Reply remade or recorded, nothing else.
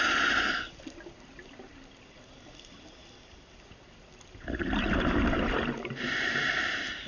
recorded